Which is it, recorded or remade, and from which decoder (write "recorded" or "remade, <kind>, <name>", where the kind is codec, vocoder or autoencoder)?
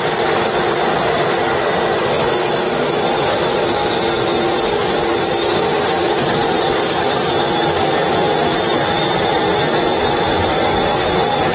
recorded